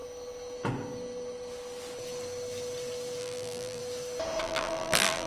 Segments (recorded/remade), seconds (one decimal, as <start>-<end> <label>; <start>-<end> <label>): 0.0-3.2 recorded; 3.2-3.8 remade; 3.8-4.4 recorded; 4.4-5.3 remade